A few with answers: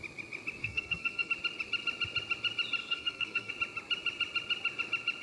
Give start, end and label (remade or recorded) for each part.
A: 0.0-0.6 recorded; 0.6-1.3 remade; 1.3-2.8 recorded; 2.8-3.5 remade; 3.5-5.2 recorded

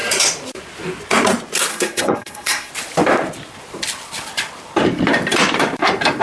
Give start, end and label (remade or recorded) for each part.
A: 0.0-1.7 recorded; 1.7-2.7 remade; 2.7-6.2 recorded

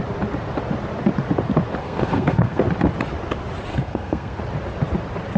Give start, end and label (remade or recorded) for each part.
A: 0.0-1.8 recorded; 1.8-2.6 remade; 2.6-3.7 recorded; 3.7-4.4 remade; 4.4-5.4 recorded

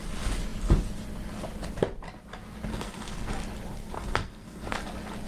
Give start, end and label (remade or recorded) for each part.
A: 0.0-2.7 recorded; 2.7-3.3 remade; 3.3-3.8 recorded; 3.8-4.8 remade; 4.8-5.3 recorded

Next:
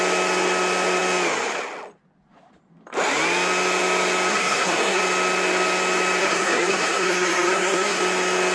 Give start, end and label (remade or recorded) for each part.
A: 0.0-4.3 recorded; 4.3-5.0 remade; 5.0-6.2 recorded; 6.2-8.0 remade; 8.0-8.5 recorded